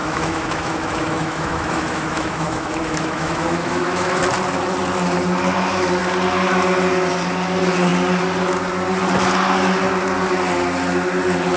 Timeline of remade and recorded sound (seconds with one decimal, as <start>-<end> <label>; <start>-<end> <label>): 0.0-4.2 remade; 4.2-11.6 recorded